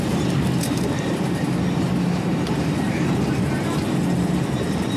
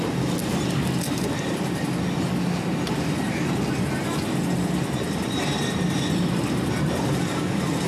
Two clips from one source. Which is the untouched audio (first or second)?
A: second